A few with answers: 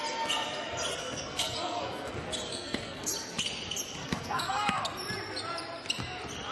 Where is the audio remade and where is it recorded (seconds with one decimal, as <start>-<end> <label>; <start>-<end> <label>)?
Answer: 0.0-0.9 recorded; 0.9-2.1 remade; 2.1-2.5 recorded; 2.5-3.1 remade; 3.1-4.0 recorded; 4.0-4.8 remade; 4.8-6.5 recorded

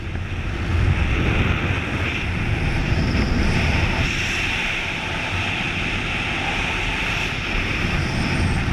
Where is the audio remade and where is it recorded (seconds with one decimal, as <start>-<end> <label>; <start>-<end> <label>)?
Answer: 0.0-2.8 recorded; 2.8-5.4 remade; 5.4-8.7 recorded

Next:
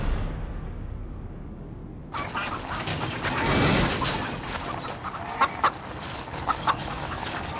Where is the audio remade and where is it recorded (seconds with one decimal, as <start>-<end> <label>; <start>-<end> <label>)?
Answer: 0.0-1.8 remade; 1.8-2.5 recorded; 2.5-2.9 remade; 2.9-5.7 recorded; 5.7-7.6 remade